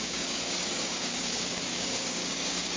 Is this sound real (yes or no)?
no